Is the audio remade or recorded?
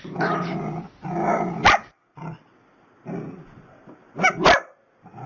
recorded